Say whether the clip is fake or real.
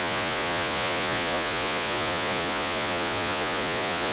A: fake